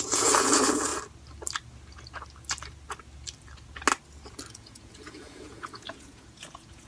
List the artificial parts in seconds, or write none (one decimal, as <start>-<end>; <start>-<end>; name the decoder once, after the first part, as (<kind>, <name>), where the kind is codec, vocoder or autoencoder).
0.0-0.9 (vocoder, Vocos); 4.5-6.9